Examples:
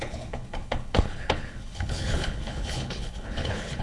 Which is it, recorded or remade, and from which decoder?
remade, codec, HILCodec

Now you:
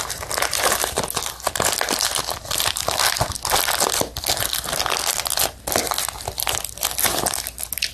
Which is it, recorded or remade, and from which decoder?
recorded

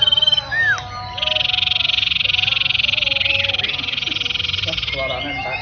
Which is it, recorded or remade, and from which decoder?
recorded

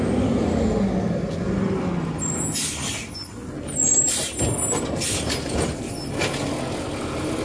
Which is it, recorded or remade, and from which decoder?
recorded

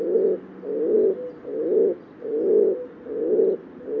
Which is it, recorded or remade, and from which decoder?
recorded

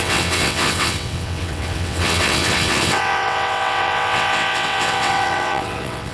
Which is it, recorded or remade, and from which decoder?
remade, vocoder, WaveNeXt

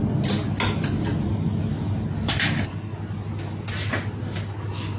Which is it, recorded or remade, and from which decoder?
recorded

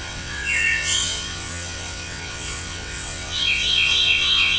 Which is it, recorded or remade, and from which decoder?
remade, vocoder, WaveNeXt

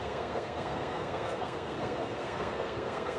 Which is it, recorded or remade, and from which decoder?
remade, codec, SNAC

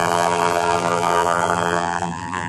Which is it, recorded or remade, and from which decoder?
remade, vocoder, BigVGAN v2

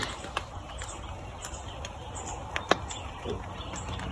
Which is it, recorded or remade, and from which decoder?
recorded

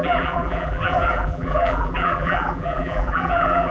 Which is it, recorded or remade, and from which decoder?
remade, vocoder, BigVGAN v2